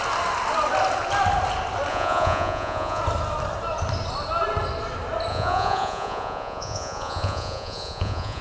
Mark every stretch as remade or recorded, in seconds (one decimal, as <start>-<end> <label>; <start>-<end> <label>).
0.0-1.9 recorded; 1.9-3.0 remade; 3.0-5.3 recorded; 5.3-8.4 remade